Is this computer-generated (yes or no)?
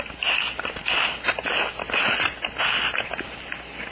no